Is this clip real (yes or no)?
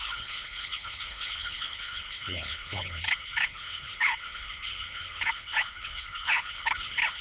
no